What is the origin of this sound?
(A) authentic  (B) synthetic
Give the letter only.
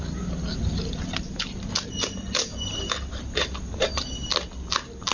A